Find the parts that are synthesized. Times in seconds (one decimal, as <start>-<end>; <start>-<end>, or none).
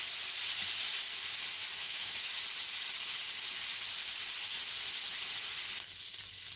1.8-2.4